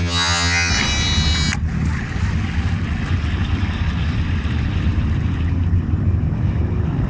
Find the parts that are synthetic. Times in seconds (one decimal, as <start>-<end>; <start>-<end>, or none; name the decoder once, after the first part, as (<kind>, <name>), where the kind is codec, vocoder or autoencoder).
0.0-0.7 (vocoder, HiFi-GAN)